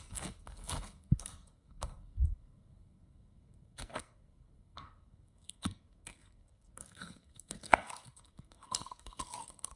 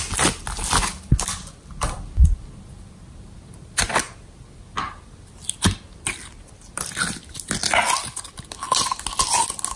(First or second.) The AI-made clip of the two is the first